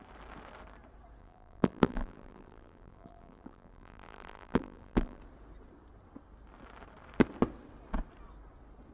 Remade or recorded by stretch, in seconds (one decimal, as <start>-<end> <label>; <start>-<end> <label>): 0.0-1.2 recorded; 1.2-5.2 remade; 5.2-8.9 recorded